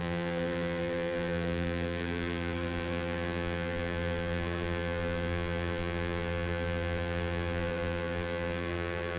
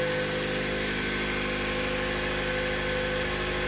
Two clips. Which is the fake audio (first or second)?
first